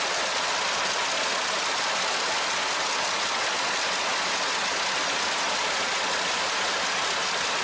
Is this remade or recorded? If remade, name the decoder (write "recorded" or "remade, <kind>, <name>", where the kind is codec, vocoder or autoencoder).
recorded